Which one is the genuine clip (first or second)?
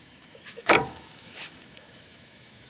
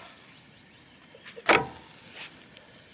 second